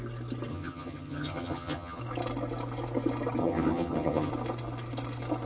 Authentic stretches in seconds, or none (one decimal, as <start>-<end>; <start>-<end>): 0.0-0.5; 2.0-3.4; 4.3-5.5